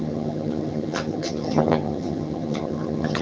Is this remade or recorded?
remade